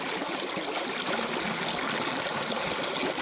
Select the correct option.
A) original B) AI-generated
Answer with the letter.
A